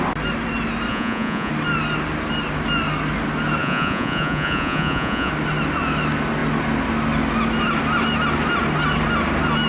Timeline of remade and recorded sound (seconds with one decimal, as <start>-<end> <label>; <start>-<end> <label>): 0.0-0.9 recorded; 0.9-1.5 remade; 1.5-3.6 recorded; 3.6-5.3 remade; 5.3-9.7 recorded